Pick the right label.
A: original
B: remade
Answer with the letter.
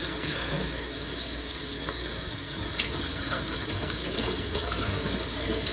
B